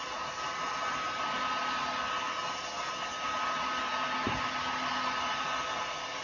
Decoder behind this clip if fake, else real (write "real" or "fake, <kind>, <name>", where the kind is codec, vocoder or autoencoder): real